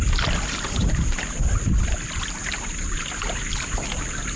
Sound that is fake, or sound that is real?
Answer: real